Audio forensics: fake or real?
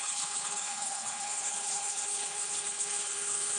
fake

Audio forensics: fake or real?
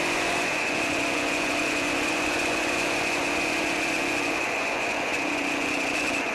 fake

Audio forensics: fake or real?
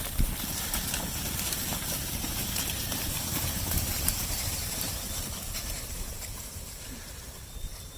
fake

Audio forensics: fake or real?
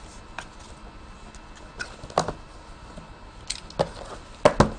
real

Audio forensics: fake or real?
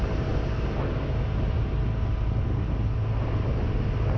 real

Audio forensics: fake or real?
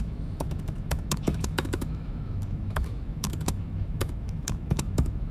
fake